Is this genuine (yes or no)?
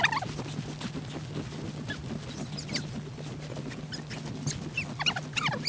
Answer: yes